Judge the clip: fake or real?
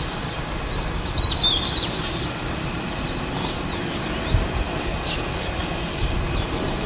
real